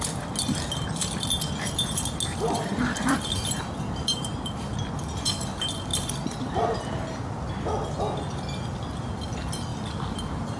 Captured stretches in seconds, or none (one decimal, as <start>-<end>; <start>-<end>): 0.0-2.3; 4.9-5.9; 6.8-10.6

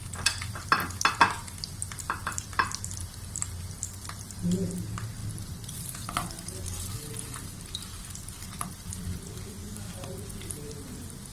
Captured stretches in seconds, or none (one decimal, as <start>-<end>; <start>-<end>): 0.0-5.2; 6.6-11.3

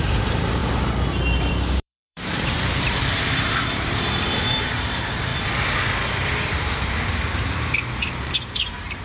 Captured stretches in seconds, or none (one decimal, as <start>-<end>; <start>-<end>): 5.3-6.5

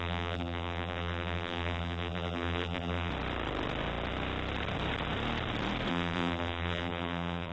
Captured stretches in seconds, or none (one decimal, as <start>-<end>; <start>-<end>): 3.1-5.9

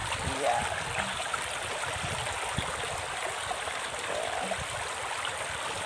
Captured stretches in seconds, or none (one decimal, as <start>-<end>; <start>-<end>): 0.0-5.9

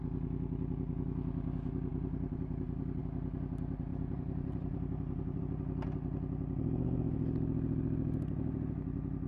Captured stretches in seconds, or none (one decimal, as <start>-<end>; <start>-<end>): 0.0-1.9; 3.0-3.9; 5.4-9.3